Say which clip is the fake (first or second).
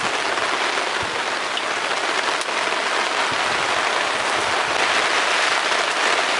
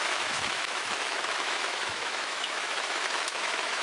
second